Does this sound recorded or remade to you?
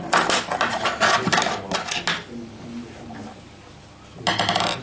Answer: recorded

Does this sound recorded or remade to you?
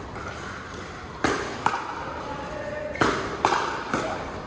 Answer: recorded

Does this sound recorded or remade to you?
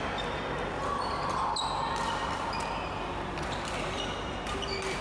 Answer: recorded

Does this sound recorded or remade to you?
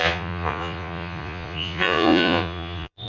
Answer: remade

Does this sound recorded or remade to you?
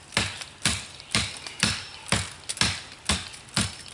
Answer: recorded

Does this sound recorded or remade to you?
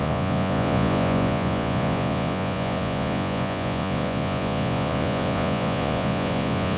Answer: remade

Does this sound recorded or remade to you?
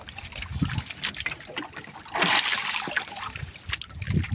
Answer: recorded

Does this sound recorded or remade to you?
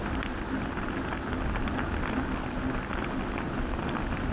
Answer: recorded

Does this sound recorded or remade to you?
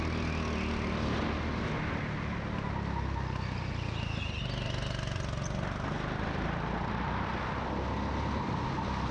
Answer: recorded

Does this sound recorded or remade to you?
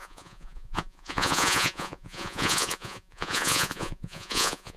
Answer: remade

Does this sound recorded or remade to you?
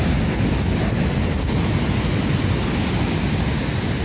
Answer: recorded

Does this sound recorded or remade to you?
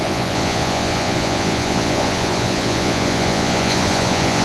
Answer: remade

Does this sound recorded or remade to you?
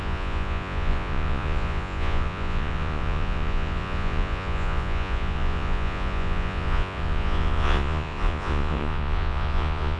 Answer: remade